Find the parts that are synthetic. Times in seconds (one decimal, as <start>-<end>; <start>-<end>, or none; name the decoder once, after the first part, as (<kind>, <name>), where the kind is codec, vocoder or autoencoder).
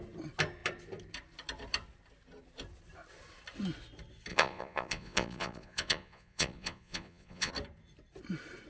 4.3-7.5 (vocoder, Vocos)